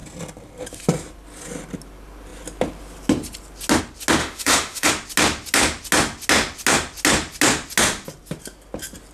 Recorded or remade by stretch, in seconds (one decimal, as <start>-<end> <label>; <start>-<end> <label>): 0.0-4.2 recorded; 4.2-4.9 remade; 4.9-9.1 recorded